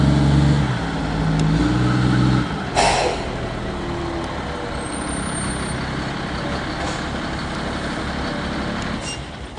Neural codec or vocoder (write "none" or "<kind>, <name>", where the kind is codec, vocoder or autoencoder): none